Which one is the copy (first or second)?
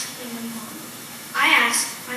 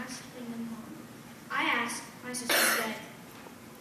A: first